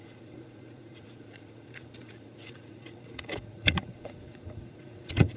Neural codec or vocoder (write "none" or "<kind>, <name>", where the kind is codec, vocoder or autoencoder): vocoder, Vocos